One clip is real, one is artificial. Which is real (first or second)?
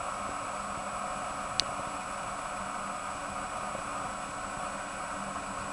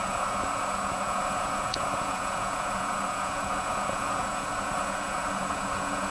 first